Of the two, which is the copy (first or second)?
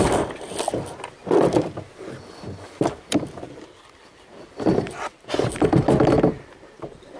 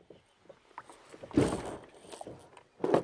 first